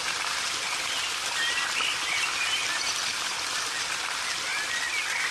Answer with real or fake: real